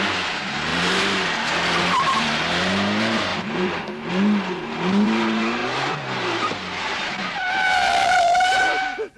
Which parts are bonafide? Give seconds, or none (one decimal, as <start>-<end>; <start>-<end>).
none